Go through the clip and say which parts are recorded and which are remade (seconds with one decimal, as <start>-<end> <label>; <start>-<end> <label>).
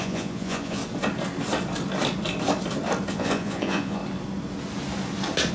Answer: 0.0-0.8 remade; 0.8-3.1 recorded; 3.1-4.0 remade; 4.0-5.5 recorded